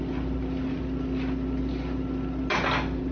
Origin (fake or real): real